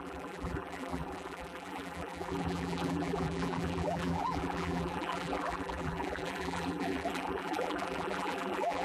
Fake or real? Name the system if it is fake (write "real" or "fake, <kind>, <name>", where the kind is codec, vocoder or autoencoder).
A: fake, vocoder, BigVGAN v2